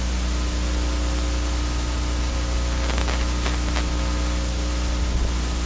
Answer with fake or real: real